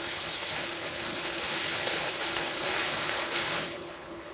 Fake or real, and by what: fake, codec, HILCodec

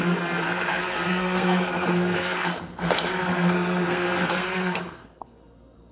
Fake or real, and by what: fake, codec, SNAC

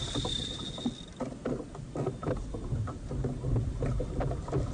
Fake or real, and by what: real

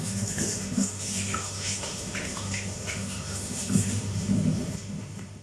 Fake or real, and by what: fake, autoencoder, DAC-VAE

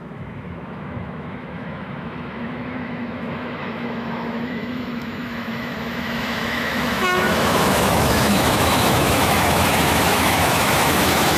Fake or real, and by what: fake, autoencoder, DAC-VAE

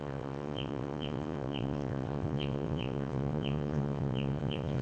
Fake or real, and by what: fake, vocoder, WaveNeXt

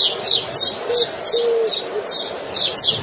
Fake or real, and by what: real